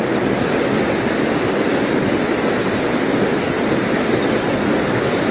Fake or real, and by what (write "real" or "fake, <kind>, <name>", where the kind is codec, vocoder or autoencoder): real